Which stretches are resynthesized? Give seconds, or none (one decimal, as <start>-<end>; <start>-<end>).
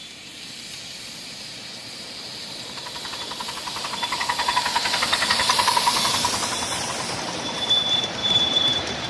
0.0-0.6; 8.2-9.1